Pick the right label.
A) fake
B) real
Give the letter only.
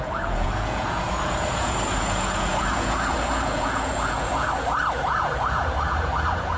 A